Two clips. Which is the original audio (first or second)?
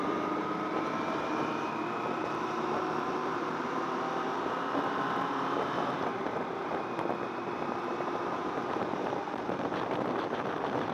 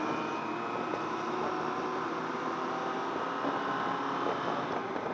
second